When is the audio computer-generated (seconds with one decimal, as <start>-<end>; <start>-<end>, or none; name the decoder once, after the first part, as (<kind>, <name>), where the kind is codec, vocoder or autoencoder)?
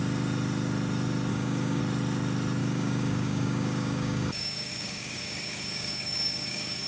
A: 1.3-1.8 (codec, DAC); 2.6-6.9